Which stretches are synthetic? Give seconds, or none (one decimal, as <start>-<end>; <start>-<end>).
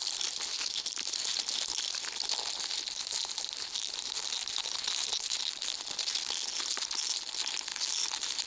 none